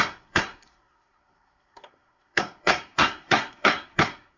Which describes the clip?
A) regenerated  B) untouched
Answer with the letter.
A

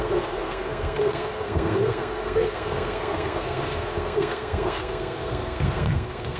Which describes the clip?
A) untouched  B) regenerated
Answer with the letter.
B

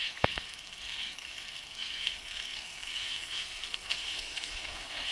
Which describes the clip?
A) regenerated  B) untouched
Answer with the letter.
A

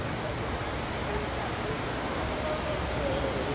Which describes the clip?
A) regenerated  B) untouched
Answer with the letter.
B